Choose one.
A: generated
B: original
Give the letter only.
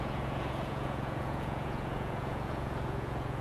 A